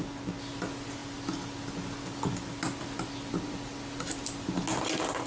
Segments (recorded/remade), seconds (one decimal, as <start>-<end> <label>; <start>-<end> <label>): 0.0-5.3 recorded